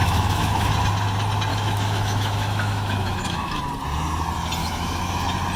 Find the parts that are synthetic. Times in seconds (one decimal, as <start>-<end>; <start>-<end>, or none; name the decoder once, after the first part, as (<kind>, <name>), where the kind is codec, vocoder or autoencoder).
0.0-0.7 (autoencoder, DAC-VAE); 1.5-3.6; 4.6-5.1